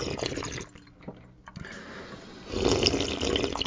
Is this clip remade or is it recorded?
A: recorded